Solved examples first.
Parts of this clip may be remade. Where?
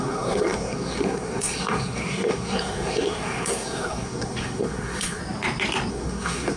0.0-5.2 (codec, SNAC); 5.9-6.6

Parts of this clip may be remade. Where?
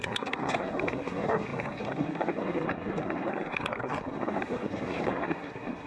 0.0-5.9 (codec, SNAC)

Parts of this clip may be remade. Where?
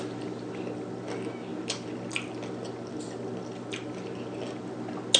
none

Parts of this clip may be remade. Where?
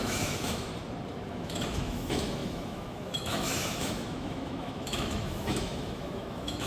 0.0-0.7 (autoencoder, DAC-VAE); 1.3-6.7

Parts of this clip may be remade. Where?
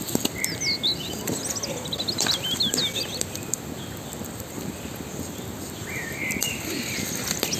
none